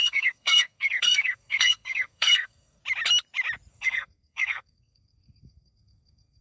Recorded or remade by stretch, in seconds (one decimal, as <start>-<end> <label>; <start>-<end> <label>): 0.0-2.8 remade; 2.8-3.7 recorded; 3.7-6.4 remade